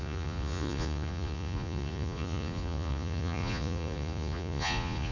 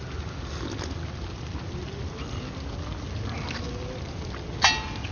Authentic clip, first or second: second